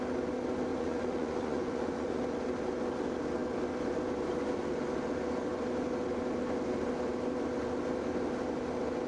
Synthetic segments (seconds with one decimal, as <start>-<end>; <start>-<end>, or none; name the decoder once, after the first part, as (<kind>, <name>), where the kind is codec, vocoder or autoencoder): 0.7-2.2 (vocoder, Vocos)